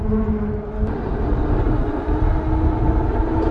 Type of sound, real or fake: real